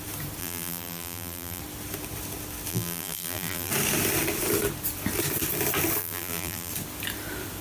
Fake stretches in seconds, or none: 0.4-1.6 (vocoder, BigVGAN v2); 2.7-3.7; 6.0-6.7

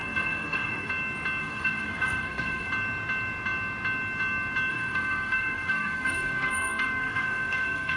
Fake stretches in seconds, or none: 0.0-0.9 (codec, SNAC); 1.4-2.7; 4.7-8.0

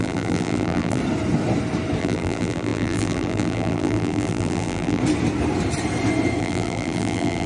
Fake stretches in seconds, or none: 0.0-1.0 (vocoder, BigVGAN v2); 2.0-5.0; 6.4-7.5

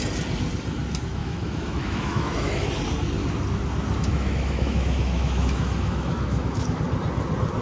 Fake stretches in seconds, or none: 1.2-2.7 (autoencoder, DAC-VAE); 4.1-6.8

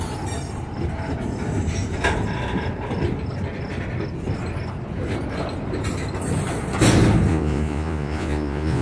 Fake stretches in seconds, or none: 7.3-8.8 (vocoder, Vocos)

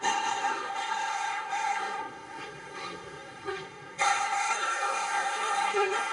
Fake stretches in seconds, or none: 0.0-6.1 (codec, SNAC)

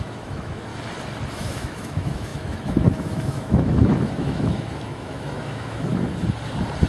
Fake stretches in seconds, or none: 0.0-0.7 (autoencoder, DAC-VAE); 1.3-5.9

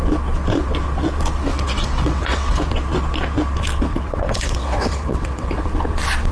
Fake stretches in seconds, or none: 1.5-2.6 (vocoder, WaveNeXt); 3.9-5.6